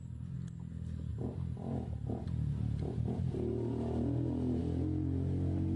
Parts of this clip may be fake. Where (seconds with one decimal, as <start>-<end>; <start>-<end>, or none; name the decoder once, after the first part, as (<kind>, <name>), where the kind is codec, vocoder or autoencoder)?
none